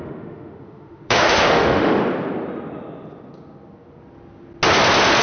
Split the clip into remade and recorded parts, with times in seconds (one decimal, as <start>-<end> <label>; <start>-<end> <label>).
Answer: 0.0-2.0 remade; 2.0-5.2 recorded